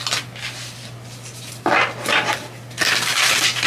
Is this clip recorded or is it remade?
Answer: recorded